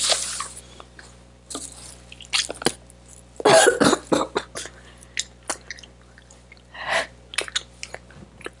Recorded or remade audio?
recorded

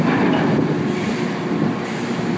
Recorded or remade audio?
recorded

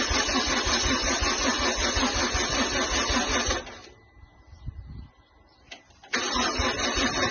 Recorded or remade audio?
recorded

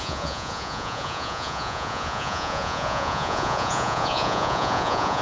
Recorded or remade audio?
remade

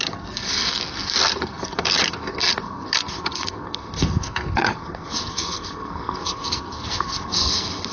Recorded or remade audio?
remade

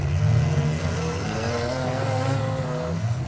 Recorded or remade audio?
remade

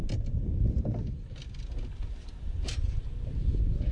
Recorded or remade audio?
recorded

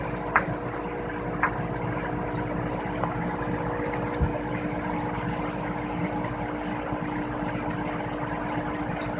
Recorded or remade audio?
recorded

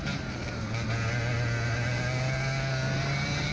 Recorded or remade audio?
recorded